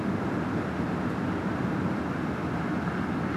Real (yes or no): yes